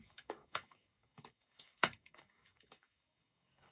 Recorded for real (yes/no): no